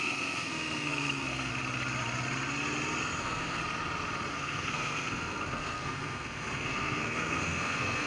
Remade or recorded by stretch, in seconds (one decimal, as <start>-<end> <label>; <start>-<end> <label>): 0.0-1.5 remade; 1.5-3.2 recorded; 3.2-3.6 remade; 3.6-4.3 recorded; 4.3-8.1 remade

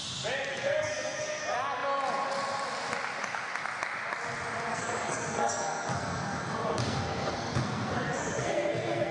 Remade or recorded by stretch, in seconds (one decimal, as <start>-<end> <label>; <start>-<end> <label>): 0.0-0.5 recorded; 0.5-1.4 remade; 1.4-4.7 recorded; 4.7-9.1 remade

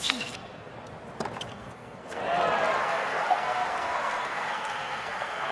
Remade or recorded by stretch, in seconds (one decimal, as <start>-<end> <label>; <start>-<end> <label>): 0.0-0.7 remade; 0.7-1.5 recorded; 1.5-2.2 remade; 2.2-2.8 recorded; 2.8-5.5 remade

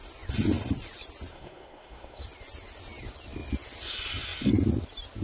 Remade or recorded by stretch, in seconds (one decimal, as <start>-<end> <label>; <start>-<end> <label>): 0.0-1.3 recorded; 1.3-2.2 remade; 2.2-5.2 recorded

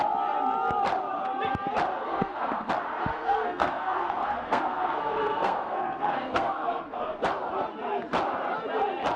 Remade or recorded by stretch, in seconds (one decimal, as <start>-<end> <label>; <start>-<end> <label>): 0.0-2.1 recorded; 2.1-2.7 remade; 2.7-3.1 recorded; 3.1-7.2 remade; 7.2-9.2 recorded